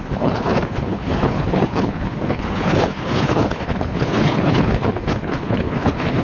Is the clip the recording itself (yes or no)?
no